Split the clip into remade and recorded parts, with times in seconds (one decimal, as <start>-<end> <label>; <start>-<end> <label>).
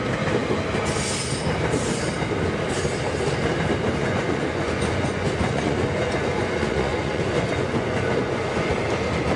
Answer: 0.0-4.0 recorded; 4.0-8.7 remade; 8.7-9.4 recorded